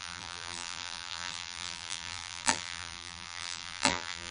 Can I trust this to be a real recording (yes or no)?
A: no